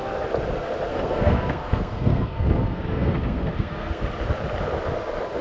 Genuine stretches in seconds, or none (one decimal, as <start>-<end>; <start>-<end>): 0.0-0.9; 4.0-5.4